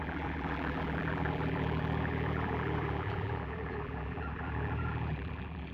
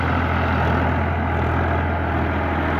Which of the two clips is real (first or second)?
second